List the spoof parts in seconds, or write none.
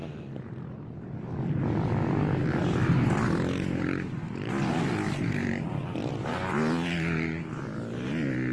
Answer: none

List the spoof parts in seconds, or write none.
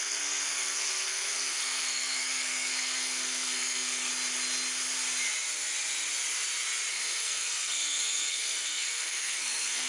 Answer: 0.0-4.1 (codec, SNAC); 6.9-9.9